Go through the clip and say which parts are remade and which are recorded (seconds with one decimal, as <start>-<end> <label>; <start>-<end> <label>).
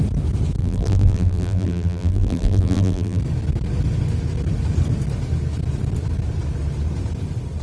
0.0-0.6 recorded; 0.6-3.2 remade; 3.2-7.6 recorded